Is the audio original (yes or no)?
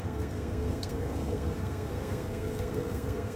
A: no